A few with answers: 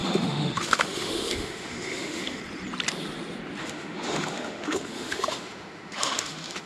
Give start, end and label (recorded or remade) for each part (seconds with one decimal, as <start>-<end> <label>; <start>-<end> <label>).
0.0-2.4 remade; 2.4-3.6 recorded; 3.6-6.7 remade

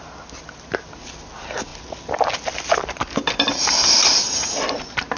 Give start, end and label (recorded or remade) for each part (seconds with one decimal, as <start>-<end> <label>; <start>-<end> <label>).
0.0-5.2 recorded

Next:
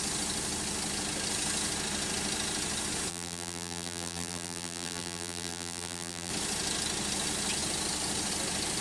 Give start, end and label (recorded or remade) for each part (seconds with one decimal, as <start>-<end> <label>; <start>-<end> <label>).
0.0-3.1 recorded; 3.1-6.3 remade; 6.3-8.8 recorded

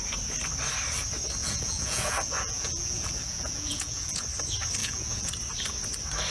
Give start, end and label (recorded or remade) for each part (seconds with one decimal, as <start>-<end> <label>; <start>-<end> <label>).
0.0-1.4 recorded; 1.4-4.2 remade; 4.2-4.8 recorded; 4.8-5.3 remade; 5.3-6.3 recorded

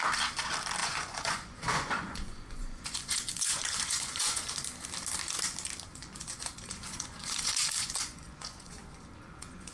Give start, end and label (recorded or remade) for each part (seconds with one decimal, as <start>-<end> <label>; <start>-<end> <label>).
0.0-0.8 recorded; 0.8-4.5 remade; 4.5-5.9 recorded; 5.9-9.7 remade